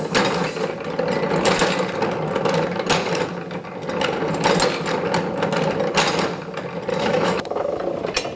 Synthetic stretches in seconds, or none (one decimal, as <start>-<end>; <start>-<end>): 6.9-7.8